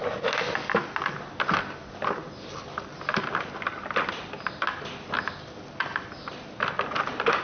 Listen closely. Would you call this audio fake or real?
real